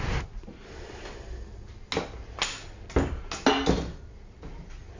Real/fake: real